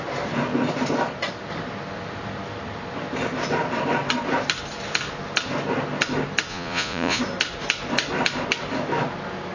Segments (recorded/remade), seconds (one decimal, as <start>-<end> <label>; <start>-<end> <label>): 0.0-6.5 recorded; 6.5-7.2 remade; 7.2-9.5 recorded